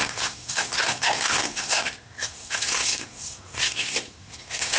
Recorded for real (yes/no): no